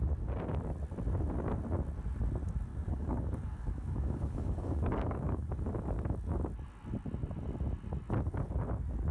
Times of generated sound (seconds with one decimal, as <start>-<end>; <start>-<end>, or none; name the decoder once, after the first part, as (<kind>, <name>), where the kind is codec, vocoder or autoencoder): 2.7-5.5 (codec, DAC)